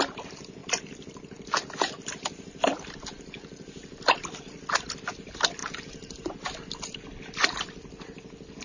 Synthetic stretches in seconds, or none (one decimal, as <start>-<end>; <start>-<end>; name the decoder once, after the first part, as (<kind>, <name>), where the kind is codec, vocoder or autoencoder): 0.6-4.4 (vocoder, BigVGAN v2); 5.6-6.7